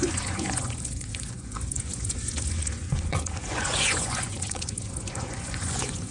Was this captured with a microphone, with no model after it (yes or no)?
no